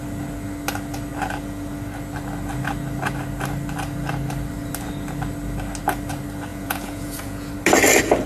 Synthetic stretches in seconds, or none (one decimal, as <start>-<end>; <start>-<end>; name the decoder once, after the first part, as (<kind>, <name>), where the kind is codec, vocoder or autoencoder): 6.5-7.5 (vocoder, Vocos)

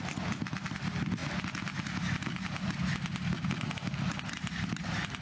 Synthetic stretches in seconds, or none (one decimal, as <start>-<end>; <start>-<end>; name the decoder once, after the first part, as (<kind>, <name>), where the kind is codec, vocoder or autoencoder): none

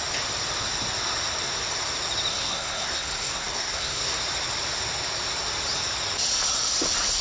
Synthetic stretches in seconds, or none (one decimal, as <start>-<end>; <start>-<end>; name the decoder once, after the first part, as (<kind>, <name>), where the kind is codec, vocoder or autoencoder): 2.3-4.2 (codec, SNAC)

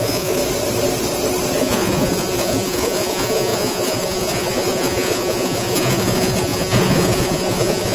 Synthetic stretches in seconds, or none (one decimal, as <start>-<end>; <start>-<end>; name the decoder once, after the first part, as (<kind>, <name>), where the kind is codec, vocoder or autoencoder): 0.0-0.4 (vocoder, Vocos); 1.6-7.9